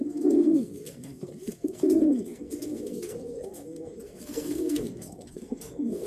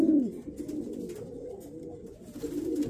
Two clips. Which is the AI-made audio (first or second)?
first